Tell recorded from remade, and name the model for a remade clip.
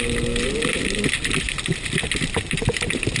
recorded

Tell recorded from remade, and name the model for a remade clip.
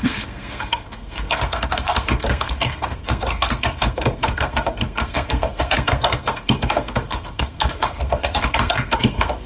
remade, codec, SNAC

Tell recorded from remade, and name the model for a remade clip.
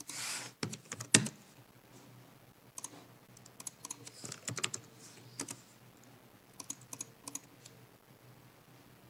recorded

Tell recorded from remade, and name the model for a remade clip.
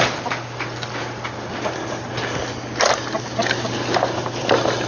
recorded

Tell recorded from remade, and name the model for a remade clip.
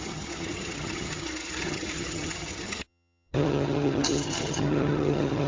remade, vocoder, HiFi-GAN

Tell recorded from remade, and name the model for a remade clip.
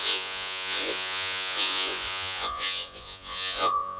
remade, vocoder, Vocos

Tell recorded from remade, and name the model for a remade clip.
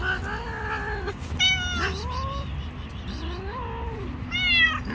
recorded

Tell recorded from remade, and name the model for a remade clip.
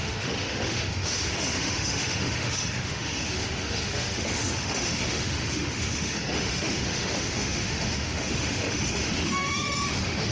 remade, autoencoder, DAC-VAE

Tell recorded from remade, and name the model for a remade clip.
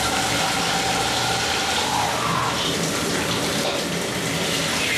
remade, vocoder, BigVGAN v2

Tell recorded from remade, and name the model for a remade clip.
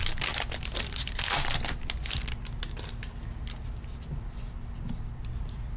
recorded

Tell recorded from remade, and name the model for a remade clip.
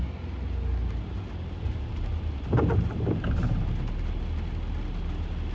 recorded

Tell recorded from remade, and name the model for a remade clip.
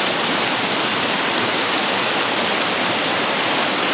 remade, vocoder, BigVGAN v2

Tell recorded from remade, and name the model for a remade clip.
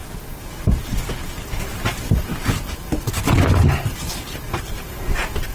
recorded